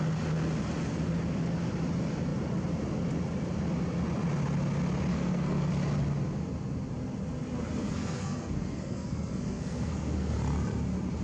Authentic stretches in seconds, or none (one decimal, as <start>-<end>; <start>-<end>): 0.0-5.1; 5.7-7.8; 10.3-11.2